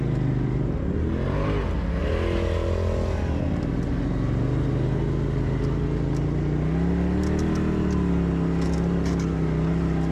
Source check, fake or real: real